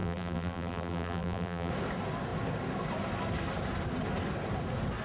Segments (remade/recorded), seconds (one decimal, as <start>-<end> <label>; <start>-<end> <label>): 0.0-1.7 remade; 1.7-5.0 recorded